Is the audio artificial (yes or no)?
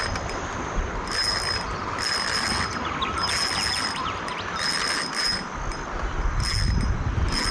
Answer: no